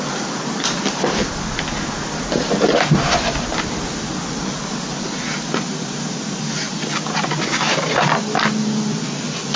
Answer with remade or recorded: recorded